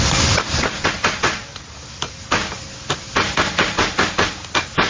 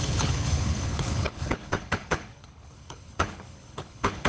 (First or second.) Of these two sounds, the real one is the first